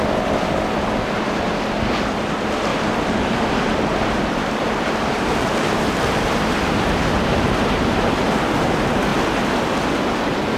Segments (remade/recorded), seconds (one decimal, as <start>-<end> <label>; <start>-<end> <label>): 0.0-2.7 recorded; 2.7-5.9 remade; 5.9-10.6 recorded